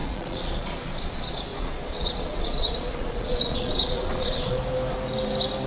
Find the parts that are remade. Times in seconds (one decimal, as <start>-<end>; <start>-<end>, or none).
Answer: 0.0-4.6